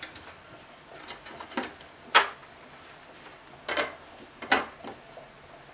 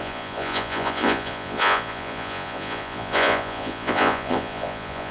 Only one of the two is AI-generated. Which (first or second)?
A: second